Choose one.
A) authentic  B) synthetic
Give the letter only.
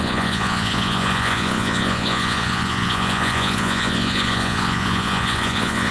B